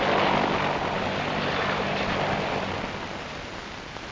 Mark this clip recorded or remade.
recorded